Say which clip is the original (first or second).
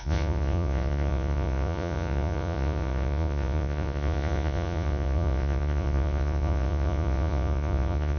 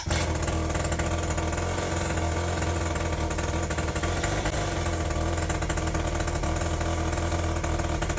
second